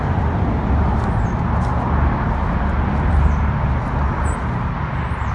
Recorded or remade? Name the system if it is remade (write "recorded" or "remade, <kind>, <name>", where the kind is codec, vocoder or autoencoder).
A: recorded